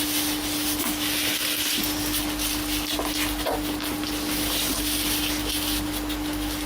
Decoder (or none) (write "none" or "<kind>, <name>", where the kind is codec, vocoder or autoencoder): none